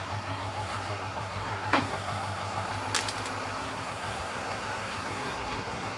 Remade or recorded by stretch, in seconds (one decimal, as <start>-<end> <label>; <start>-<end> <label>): 0.0-2.7 remade; 2.7-3.6 recorded; 3.6-6.0 remade